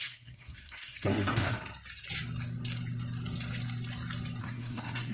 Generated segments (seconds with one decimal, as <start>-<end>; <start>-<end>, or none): 0.0-1.5; 4.4-5.1